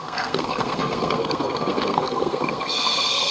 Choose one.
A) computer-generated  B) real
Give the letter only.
A